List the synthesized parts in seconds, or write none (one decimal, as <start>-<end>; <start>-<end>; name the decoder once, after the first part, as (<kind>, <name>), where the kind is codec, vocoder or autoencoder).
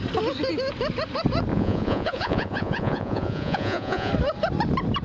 1.5-4.1 (vocoder, Vocos)